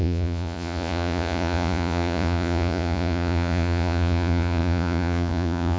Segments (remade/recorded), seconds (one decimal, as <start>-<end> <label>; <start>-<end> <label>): 0.0-5.8 remade